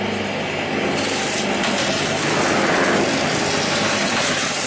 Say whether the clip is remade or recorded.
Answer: recorded